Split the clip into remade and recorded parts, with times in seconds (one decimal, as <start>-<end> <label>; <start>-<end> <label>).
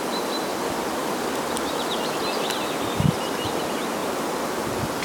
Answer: 0.0-1.0 recorded; 1.0-2.2 remade; 2.2-5.0 recorded